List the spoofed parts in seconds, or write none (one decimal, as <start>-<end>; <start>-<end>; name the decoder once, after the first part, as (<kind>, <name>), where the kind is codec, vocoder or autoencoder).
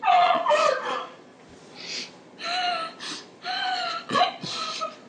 0.0-1.3 (vocoder, Vocos); 3.5-5.1